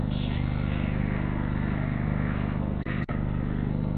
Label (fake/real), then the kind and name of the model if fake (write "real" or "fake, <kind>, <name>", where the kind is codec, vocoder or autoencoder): fake, codec, SNAC